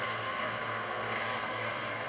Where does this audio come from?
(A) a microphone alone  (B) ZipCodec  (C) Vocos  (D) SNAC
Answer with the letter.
D